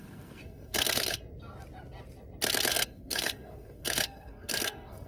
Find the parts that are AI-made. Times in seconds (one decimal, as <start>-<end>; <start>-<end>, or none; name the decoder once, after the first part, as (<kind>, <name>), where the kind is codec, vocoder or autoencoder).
0.0-1.2 (codec, SNAC); 2.7-5.1